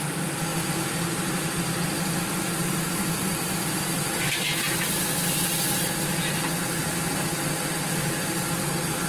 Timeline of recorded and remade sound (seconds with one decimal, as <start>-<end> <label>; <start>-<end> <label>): 0.0-0.5 recorded; 0.5-3.8 remade; 3.8-4.5 recorded; 4.5-5.3 remade; 5.3-9.1 recorded